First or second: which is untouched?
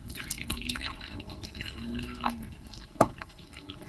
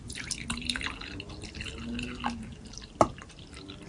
second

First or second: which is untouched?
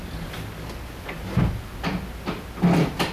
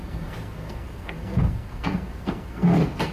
first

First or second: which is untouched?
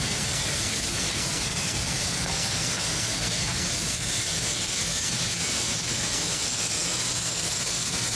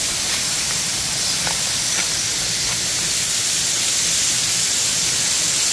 second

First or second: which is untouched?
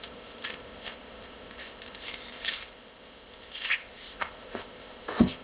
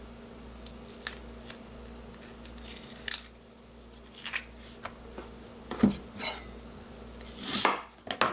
second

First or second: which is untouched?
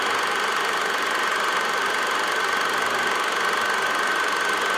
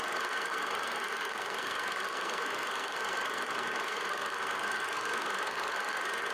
first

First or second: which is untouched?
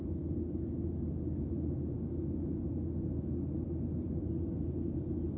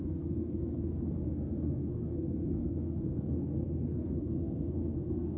first